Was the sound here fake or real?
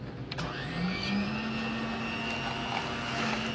real